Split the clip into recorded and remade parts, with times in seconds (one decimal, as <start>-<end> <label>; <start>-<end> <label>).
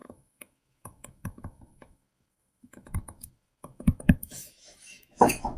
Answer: 0.0-5.6 remade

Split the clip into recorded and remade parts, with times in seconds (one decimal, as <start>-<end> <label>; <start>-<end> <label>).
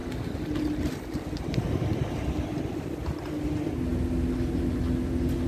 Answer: 0.0-5.5 recorded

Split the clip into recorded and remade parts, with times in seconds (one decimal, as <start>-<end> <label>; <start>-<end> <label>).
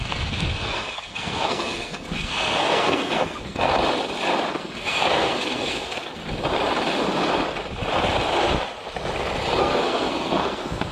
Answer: 0.0-3.7 remade; 3.7-4.5 recorded; 4.5-6.2 remade; 6.2-9.6 recorded; 9.6-10.9 remade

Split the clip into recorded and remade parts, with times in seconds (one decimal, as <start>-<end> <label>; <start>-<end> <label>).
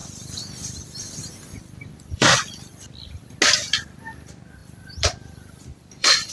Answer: 0.0-2.4 remade; 2.4-4.6 recorded; 4.6-6.3 remade